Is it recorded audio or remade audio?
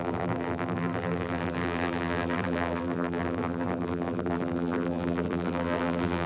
remade